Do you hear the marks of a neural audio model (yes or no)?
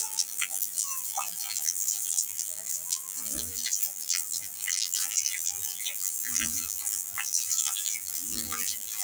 yes